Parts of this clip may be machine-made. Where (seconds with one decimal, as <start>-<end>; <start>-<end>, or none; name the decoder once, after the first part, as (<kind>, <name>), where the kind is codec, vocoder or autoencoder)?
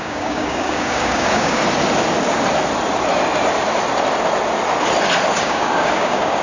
0.0-1.6 (codec, DAC); 5.4-6.4